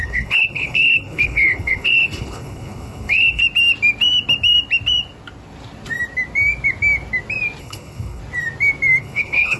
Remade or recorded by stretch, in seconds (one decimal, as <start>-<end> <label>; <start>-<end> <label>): 0.0-3.4 remade; 3.4-7.6 recorded; 7.6-8.2 remade; 8.2-9.0 recorded; 9.0-9.6 remade